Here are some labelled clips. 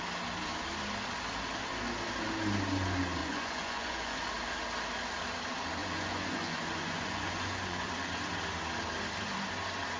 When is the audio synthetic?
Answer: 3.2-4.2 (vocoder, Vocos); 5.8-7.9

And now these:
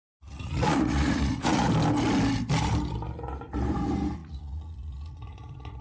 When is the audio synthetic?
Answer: 0.0-1.7 (vocoder, Vocos); 4.2-5.8

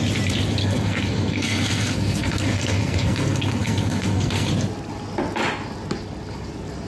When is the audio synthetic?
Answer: 0.6-4.5 (codec, SNAC)

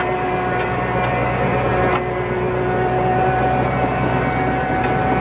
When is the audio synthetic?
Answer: none

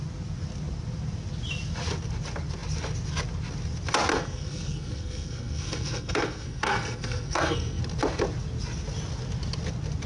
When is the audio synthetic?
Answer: 4.1-7.8 (codec, SNAC)

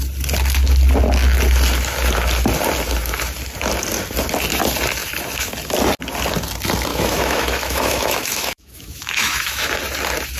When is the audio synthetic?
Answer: 6.9-9.8 (autoencoder, DAC-VAE)

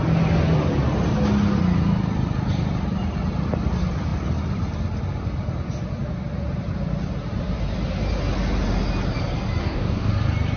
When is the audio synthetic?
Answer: 9.6-10.1 (codec, DAC)

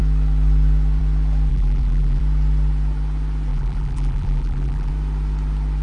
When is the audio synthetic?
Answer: 1.5-2.2 (vocoder, BigVGAN v2); 3.5-4.9